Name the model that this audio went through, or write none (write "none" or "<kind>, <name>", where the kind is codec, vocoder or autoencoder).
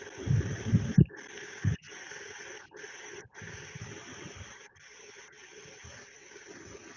none